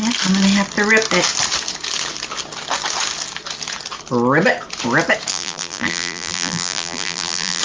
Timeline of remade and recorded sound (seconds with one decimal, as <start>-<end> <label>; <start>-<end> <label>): 0.0-5.3 recorded; 5.3-7.6 remade